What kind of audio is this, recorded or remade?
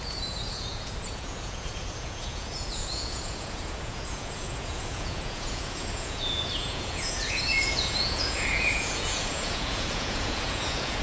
remade